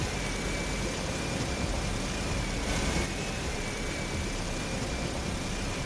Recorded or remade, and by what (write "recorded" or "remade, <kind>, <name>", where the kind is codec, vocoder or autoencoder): remade, vocoder, BigVGAN v2